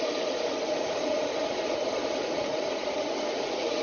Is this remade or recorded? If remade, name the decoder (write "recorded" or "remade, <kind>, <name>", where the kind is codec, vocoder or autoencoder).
remade, vocoder, Vocos